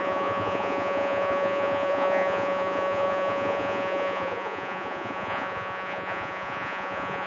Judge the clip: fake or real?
fake